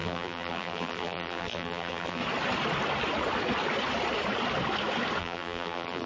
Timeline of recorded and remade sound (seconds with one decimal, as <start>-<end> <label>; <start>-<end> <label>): 0.0-2.2 remade; 2.2-5.2 recorded; 5.2-6.1 remade